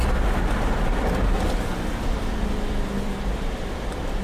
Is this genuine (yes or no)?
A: no